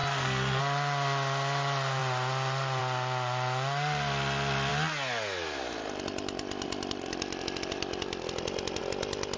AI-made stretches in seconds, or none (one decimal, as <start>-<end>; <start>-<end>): 0.0-0.6